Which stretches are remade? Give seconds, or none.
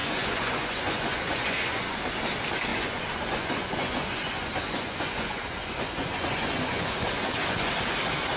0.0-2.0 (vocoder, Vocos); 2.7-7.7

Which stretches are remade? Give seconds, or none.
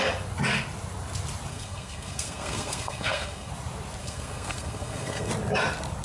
1.5-3.5 (codec, SNAC); 4.0-5.3